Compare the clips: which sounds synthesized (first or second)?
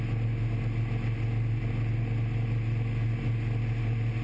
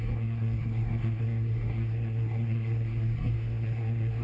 second